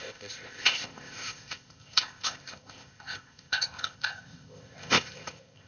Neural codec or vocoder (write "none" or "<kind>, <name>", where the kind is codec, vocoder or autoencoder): codec, ZipCodec